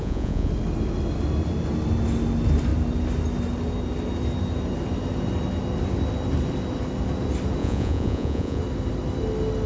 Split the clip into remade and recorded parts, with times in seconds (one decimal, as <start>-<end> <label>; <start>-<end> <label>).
0.0-0.5 remade; 0.5-7.6 recorded; 7.6-8.6 remade; 8.6-9.7 recorded